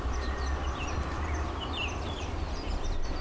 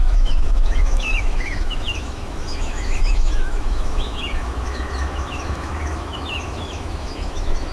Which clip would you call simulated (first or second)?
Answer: second